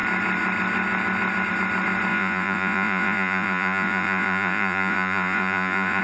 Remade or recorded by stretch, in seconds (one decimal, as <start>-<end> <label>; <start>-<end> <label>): 0.0-2.1 recorded; 2.1-6.0 remade